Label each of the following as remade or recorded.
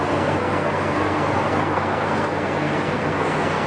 remade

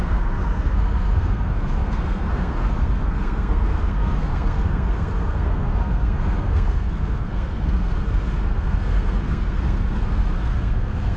remade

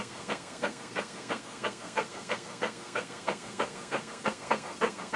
remade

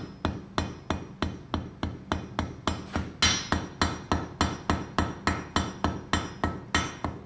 recorded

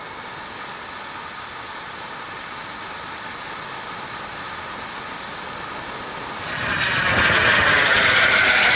recorded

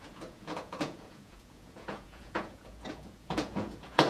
remade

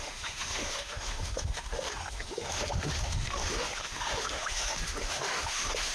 remade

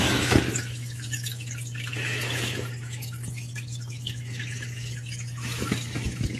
remade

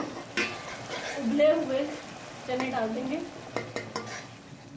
recorded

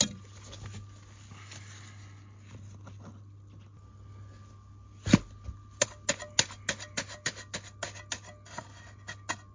recorded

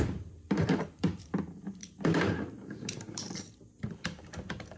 remade